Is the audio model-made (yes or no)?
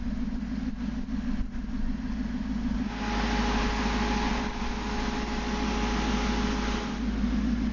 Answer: no